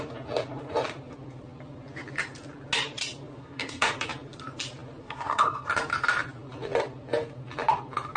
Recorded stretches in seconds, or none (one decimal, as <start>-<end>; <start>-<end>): 0.0-3.4; 3.9-5.0; 5.7-8.2